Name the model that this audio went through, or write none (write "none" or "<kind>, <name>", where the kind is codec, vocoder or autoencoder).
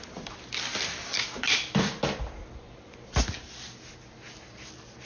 none